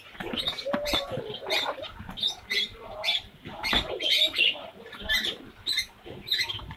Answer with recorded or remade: remade